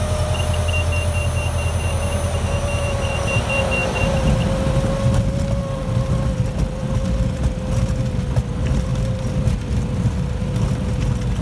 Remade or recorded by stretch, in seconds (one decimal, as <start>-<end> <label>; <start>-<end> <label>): 0.0-11.4 recorded